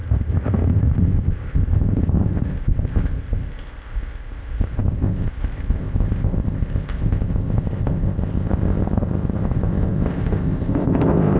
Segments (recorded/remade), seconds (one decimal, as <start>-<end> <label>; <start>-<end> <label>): 0.0-11.4 remade